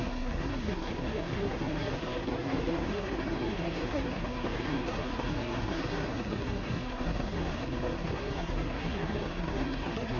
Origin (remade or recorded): remade